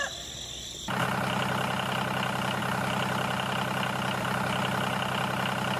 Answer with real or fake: real